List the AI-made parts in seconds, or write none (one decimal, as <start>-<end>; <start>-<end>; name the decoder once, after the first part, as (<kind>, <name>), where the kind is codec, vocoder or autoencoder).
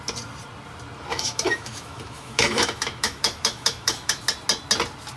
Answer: 1.1-4.2 (autoencoder, DAC-VAE)